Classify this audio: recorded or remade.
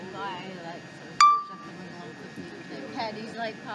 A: recorded